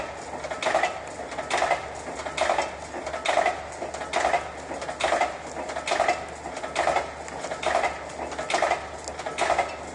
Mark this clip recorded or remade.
recorded